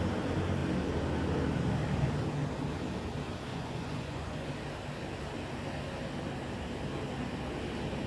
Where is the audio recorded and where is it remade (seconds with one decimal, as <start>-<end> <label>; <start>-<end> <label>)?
0.0-3.5 recorded; 3.5-4.5 remade; 4.5-8.1 recorded